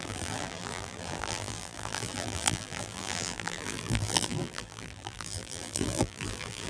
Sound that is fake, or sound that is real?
fake